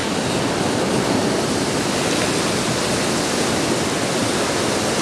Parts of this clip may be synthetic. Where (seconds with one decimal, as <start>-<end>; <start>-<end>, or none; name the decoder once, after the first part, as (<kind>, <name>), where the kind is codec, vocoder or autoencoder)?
none